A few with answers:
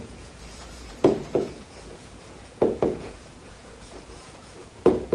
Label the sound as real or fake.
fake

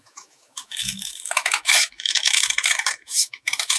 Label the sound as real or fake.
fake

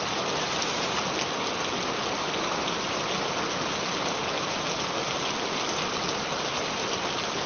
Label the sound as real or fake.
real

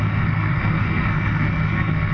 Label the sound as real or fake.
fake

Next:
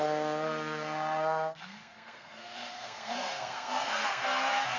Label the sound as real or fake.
fake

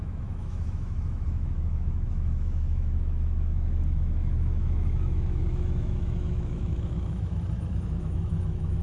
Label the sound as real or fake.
fake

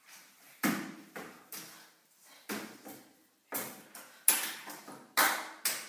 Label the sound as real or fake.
real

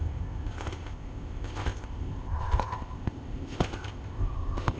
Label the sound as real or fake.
fake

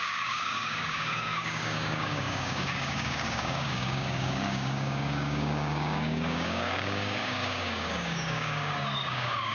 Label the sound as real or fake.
fake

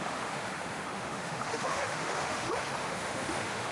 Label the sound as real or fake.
fake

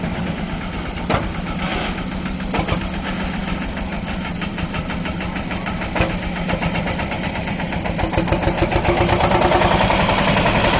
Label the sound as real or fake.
real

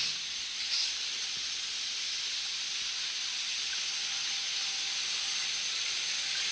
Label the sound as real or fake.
real